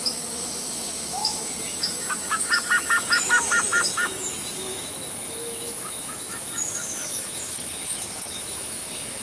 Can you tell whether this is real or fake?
fake